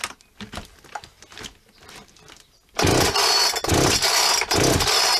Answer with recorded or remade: recorded